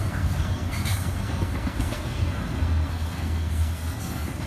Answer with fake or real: fake